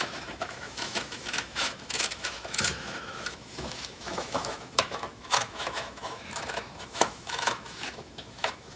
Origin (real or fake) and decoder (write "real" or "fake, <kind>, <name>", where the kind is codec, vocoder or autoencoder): fake, autoencoder, DAC-VAE